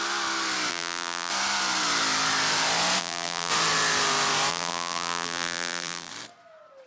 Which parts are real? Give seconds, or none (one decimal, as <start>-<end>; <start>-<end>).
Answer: 0.0-0.7; 1.3-3.0; 3.5-4.5; 6.1-6.9